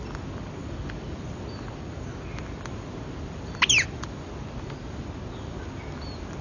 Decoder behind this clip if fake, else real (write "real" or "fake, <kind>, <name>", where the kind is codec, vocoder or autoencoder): real